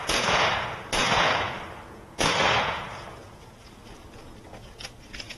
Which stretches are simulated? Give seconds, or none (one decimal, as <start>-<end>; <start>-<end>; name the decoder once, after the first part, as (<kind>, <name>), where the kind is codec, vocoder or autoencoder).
0.0-5.4 (vocoder, Vocos)

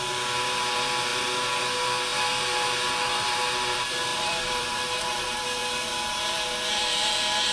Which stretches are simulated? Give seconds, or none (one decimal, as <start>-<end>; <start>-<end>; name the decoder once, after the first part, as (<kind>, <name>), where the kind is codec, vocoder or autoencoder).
0.0-5.6 (vocoder, BigVGAN v2); 6.7-7.5

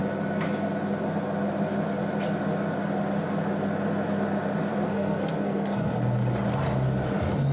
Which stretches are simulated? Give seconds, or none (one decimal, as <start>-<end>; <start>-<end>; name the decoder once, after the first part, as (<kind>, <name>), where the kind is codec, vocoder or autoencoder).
4.7-5.9 (codec, SNAC)

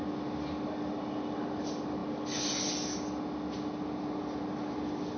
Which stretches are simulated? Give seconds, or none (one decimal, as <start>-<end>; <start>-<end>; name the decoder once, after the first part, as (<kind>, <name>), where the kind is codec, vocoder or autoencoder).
none

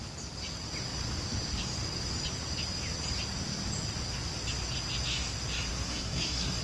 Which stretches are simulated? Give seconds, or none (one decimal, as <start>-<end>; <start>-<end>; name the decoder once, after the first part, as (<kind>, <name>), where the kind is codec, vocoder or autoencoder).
5.7-6.6 (codec, SNAC)